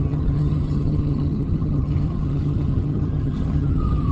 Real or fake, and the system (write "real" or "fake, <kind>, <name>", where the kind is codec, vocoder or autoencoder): fake, vocoder, HiFi-GAN